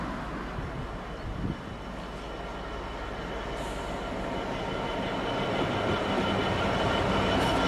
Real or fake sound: real